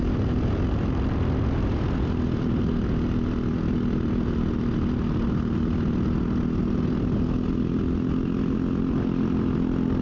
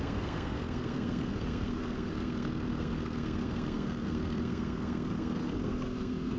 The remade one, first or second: second